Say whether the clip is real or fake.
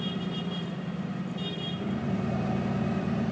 fake